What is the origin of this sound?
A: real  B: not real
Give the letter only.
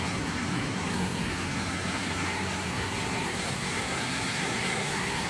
B